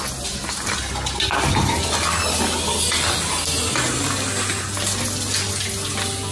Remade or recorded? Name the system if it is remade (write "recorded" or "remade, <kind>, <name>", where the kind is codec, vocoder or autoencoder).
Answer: recorded